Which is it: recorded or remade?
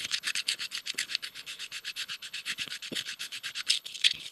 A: remade